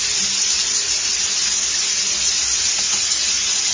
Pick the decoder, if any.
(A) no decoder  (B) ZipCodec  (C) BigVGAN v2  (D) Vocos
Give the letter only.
A